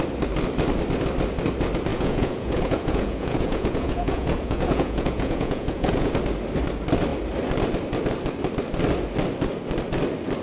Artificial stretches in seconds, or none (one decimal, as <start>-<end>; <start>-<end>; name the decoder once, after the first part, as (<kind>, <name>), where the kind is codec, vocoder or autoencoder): 1.9-6.1 (vocoder, Vocos)